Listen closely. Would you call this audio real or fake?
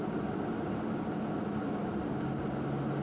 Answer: real